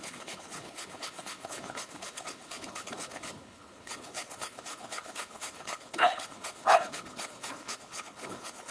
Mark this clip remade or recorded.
remade